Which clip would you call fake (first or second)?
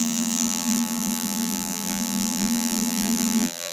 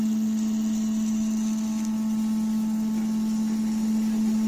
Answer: first